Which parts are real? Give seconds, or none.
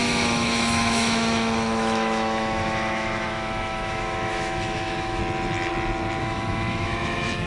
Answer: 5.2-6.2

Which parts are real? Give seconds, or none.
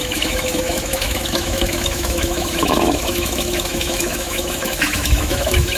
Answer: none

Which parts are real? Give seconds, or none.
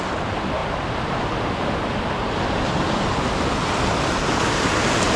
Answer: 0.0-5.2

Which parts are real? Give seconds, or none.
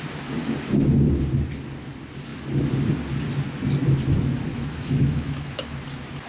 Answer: 0.0-4.5; 5.6-6.3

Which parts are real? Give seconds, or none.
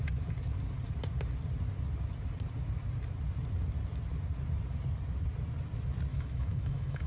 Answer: 0.0-6.1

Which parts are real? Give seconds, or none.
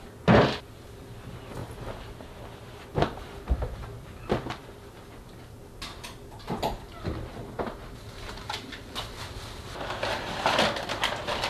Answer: 0.0-11.5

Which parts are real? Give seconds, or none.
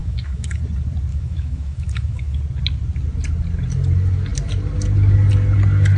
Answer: 0.6-1.1; 2.4-6.0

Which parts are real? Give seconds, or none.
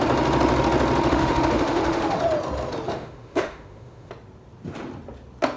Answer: 0.0-1.1; 2.2-2.9; 4.1-5.6